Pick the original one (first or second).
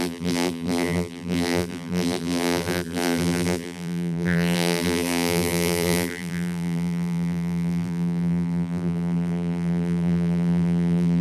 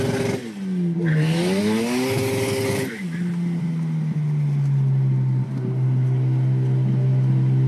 second